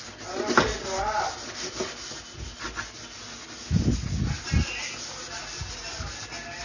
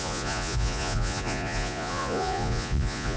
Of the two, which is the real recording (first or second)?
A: first